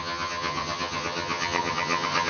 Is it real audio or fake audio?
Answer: fake